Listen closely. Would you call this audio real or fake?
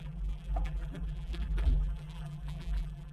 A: fake